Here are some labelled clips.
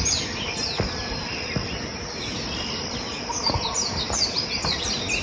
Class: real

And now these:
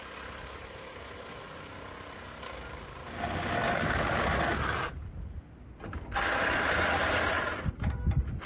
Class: real